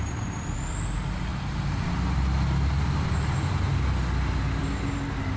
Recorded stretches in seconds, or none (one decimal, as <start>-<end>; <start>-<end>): 0.0-5.4